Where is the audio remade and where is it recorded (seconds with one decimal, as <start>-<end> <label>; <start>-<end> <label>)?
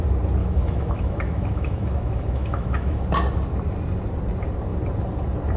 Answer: 0.0-0.4 recorded; 0.4-3.0 remade; 3.0-5.6 recorded